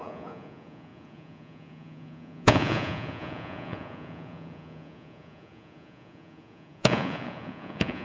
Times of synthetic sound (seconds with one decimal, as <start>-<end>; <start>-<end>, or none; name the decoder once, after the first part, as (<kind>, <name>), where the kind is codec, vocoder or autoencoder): 0.0-8.0 (vocoder, Vocos)